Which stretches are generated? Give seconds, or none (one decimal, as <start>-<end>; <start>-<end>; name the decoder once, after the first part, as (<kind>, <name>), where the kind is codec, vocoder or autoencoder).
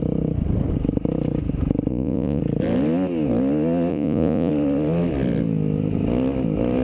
1.9-2.4 (vocoder, Vocos); 3.9-4.5